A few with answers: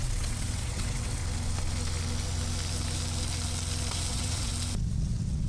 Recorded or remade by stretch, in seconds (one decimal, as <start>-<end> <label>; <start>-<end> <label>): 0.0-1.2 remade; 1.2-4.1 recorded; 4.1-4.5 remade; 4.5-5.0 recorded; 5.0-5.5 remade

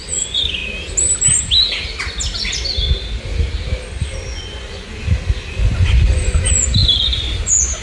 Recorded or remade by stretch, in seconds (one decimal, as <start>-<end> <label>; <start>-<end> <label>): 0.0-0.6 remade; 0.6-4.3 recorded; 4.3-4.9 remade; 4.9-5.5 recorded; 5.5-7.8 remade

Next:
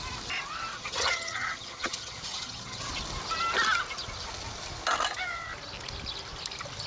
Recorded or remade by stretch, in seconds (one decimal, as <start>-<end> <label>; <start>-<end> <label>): 0.0-0.7 recorded; 0.7-2.9 remade; 2.9-6.9 recorded

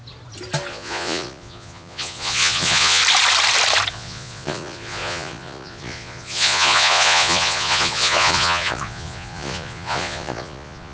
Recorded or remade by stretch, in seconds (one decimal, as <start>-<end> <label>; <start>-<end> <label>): 0.0-0.7 recorded; 0.7-3.0 remade; 3.0-3.9 recorded; 3.9-10.9 remade

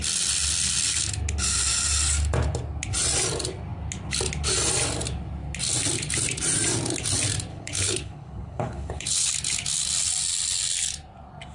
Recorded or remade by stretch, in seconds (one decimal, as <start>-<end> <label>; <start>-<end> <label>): 0.0-7.5 recorded; 7.5-9.3 remade; 9.3-11.5 recorded

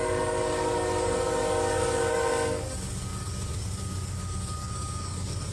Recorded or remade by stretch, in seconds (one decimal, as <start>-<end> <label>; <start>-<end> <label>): 0.0-5.5 remade